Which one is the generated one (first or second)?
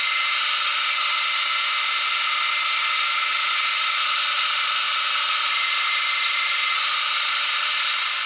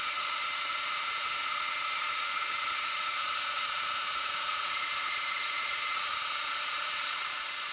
second